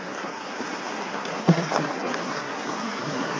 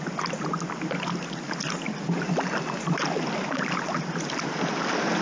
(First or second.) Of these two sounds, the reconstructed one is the first